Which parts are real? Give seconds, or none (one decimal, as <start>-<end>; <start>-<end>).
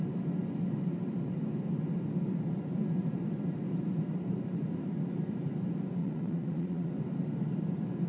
0.0-6.0; 6.9-8.1